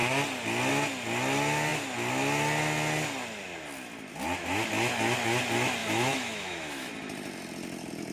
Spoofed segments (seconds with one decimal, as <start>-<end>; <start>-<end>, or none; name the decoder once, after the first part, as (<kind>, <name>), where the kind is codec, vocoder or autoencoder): 5.8-6.9 (autoencoder, DAC-VAE)